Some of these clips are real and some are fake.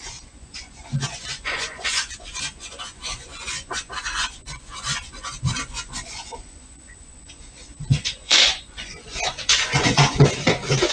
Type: fake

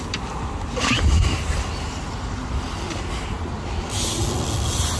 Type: real